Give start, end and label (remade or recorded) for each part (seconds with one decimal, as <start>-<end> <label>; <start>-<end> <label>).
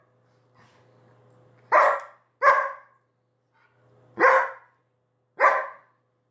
0.0-6.3 recorded